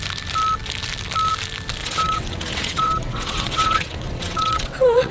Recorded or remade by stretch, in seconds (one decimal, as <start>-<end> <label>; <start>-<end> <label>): 0.0-1.8 recorded; 1.8-5.1 remade